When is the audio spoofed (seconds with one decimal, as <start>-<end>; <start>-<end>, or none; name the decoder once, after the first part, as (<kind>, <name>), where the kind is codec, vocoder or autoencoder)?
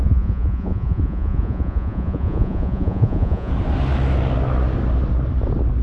0.0-3.5 (vocoder, Vocos)